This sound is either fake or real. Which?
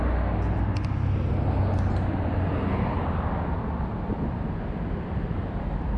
real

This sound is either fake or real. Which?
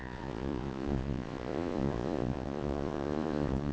fake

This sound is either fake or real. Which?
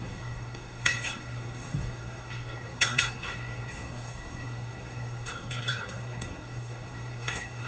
fake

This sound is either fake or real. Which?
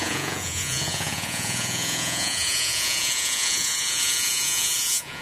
fake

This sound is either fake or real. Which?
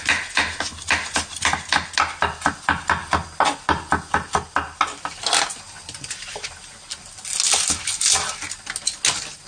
real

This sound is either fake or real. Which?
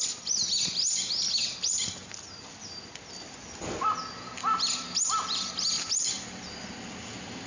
real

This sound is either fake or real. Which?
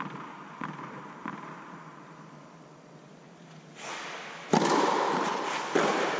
real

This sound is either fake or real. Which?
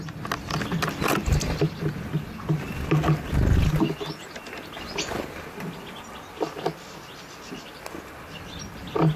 real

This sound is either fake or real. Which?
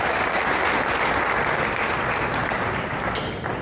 real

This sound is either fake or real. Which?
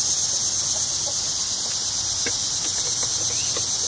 real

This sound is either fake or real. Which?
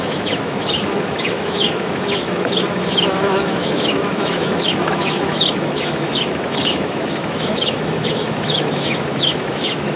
fake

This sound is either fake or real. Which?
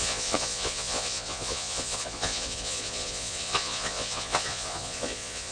fake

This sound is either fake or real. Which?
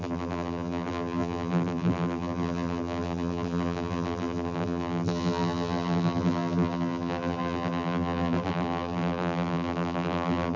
fake